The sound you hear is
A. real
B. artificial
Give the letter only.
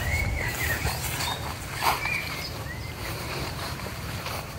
B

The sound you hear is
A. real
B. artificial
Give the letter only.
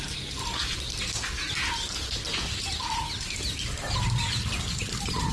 A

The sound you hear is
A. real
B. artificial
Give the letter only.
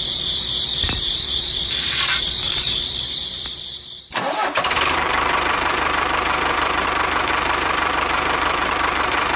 B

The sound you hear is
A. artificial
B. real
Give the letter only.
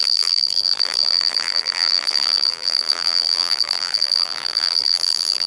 A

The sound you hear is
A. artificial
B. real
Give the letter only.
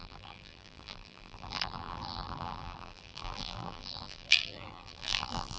A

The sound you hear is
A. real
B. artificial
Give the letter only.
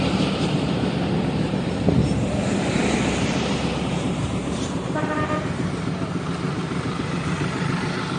B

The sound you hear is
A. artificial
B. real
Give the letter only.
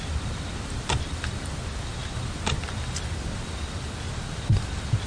B